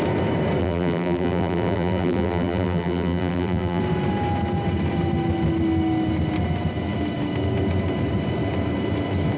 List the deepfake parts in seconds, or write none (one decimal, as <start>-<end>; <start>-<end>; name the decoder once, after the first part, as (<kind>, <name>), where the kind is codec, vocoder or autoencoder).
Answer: 0.6-3.8 (vocoder, BigVGAN v2)